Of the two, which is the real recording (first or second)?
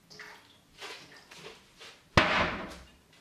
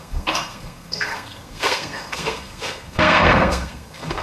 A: first